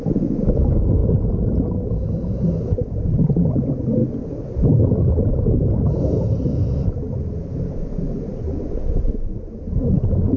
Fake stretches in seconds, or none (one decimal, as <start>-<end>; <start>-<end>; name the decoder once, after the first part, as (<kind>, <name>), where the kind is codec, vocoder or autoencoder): none